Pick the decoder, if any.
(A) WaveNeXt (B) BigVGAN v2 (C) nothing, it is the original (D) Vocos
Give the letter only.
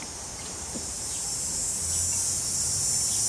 B